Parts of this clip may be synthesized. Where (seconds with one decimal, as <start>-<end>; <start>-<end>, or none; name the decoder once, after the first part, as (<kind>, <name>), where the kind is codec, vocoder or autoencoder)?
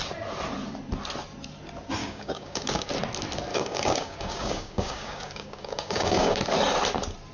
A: 2.0-2.9 (codec, DAC); 3.5-6.4